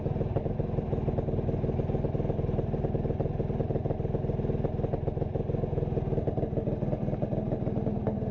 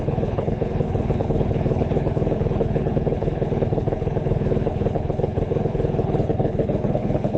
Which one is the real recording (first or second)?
first